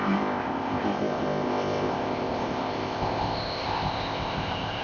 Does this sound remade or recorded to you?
remade